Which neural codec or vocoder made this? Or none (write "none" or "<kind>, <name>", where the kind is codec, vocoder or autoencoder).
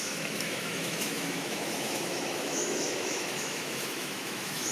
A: autoencoder, DAC-VAE